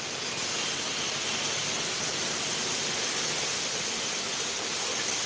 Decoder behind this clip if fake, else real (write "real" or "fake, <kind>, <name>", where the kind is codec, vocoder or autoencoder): real